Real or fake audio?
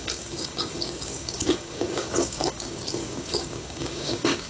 fake